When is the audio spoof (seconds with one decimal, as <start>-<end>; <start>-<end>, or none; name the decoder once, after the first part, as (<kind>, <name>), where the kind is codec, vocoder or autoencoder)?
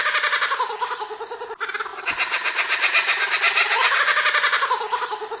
none